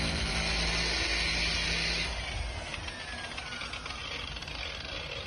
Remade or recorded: recorded